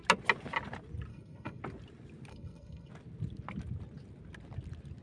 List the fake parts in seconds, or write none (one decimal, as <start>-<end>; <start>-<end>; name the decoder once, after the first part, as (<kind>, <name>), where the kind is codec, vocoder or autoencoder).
1.1-1.6 (codec, SNAC); 2.3-2.9